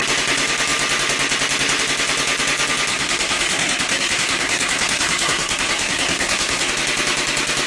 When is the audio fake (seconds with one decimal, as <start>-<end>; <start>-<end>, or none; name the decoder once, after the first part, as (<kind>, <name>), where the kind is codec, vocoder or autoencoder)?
2.9-6.7 (codec, SNAC)